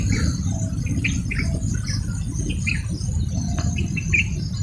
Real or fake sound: real